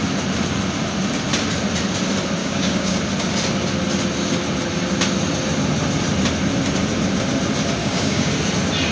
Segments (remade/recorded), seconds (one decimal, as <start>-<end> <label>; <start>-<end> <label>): 0.0-2.4 recorded; 2.4-3.0 remade; 3.0-7.8 recorded; 7.8-8.3 remade; 8.3-8.9 recorded